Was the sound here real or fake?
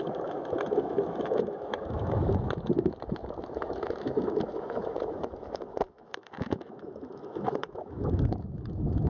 fake